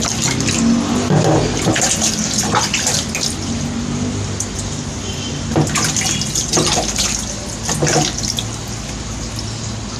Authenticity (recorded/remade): recorded